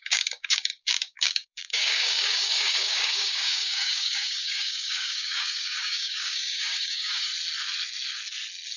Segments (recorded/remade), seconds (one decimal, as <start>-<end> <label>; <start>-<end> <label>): 0.0-7.3 remade; 7.3-8.8 recorded